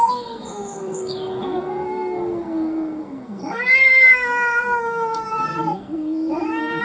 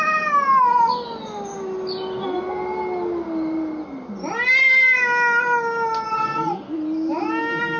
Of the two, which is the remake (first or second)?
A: first